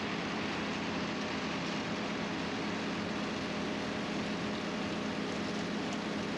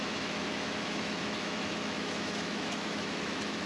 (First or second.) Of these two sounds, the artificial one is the second